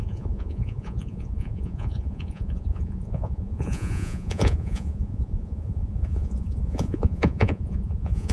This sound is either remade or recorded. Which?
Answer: remade